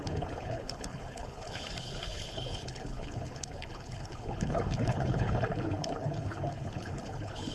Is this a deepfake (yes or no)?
yes